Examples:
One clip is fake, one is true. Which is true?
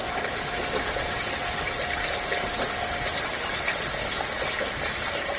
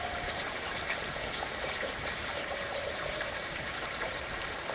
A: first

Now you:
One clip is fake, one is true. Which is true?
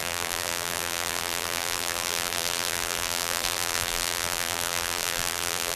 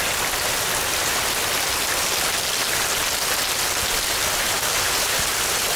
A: second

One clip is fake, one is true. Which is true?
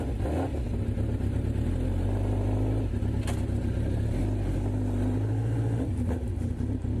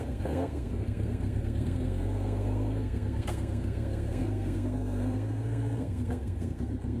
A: first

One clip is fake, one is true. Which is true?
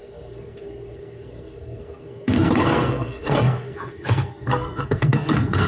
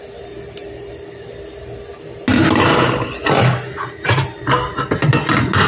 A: second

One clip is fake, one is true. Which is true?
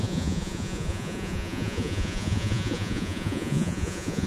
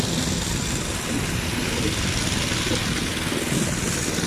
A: second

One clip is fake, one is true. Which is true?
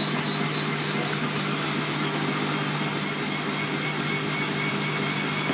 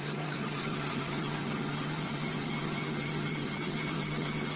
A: first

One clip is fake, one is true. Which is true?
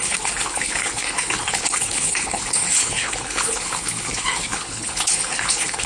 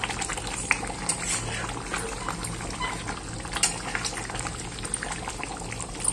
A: second